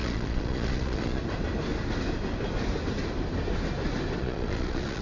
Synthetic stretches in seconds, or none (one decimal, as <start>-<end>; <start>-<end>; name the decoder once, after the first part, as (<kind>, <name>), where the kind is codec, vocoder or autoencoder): 0.0-1.2 (vocoder, Vocos); 4.2-5.0